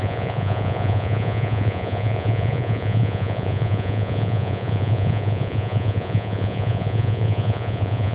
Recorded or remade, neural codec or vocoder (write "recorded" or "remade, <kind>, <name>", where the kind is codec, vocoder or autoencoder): remade, vocoder, Vocos